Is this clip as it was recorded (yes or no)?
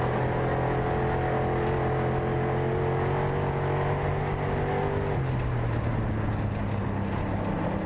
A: yes